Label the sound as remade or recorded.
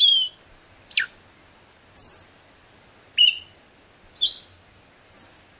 recorded